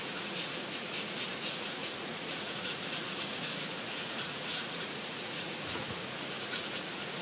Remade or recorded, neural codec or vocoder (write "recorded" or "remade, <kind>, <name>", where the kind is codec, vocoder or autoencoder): remade, vocoder, Vocos